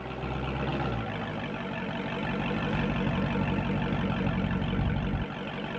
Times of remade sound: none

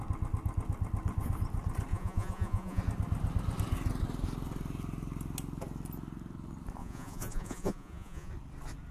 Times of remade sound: 1.9-2.8 (vocoder, Vocos); 6.8-8.3

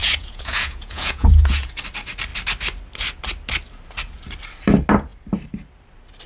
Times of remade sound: 0.0-1.7 (vocoder, Vocos)

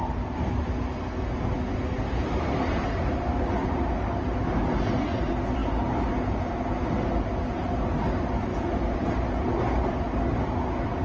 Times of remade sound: 8.5-9.1 (vocoder, Vocos)

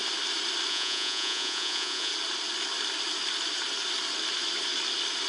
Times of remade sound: 0.7-2.1 (vocoder, Vocos)

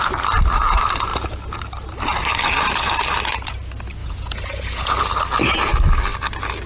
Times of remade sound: 4.0-5.0 (vocoder, Vocos)

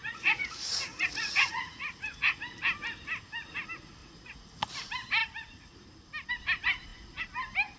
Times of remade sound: 0.0-2.4 (vocoder, Vocos); 4.0-4.7

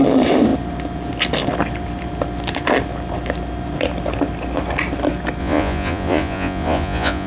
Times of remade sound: 5.4-7.3 (vocoder, Vocos)